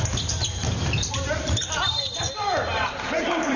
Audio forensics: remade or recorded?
remade